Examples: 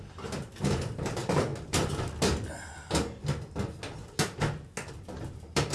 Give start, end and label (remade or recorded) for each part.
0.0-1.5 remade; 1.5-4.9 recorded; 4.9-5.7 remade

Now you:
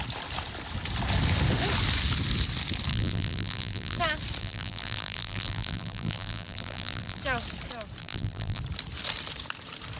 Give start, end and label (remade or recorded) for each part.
0.0-2.9 recorded; 2.9-4.0 remade; 4.0-4.4 recorded; 4.4-7.2 remade; 7.2-8.0 recorded; 8.0-8.6 remade; 8.6-10.0 recorded

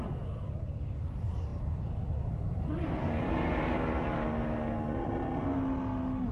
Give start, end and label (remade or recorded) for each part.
0.0-6.3 recorded

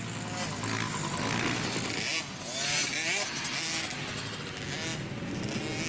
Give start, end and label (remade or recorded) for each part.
0.0-5.9 recorded

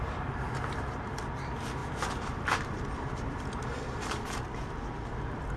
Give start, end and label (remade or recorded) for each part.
0.0-5.6 remade

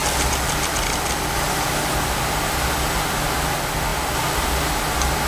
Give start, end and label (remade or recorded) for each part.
0.0-1.9 remade; 1.9-5.3 recorded

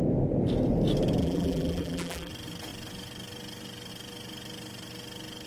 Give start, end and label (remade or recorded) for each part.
0.0-1.2 recorded; 1.2-2.3 remade; 2.3-5.5 recorded

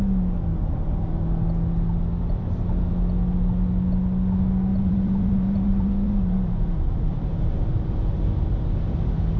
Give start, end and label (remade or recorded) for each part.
0.0-4.7 recorded; 4.7-8.2 remade; 8.2-9.4 recorded